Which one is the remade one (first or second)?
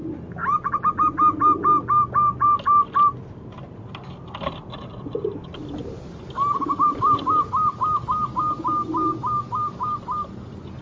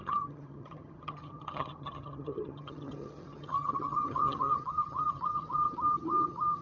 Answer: second